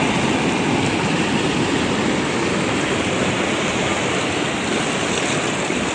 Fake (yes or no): no